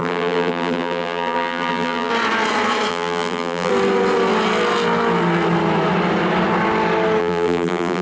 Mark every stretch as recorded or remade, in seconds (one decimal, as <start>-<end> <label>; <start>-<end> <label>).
0.0-2.1 remade; 2.1-2.9 recorded; 2.9-3.7 remade; 3.7-7.2 recorded; 7.2-8.0 remade